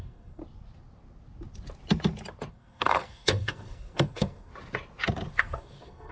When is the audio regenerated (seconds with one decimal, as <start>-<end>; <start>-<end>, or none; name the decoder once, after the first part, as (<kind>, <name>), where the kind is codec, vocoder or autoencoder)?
0.0-0.4 (codec, SNAC); 2.5-4.5; 5.3-6.1